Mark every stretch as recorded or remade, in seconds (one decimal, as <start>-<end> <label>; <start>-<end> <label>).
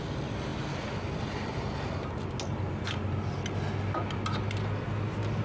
0.0-5.4 recorded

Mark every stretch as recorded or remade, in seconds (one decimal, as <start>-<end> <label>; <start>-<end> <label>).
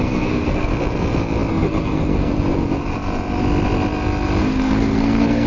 0.0-0.7 remade; 0.7-1.5 recorded; 1.5-2.3 remade; 2.3-4.4 recorded; 4.4-5.5 remade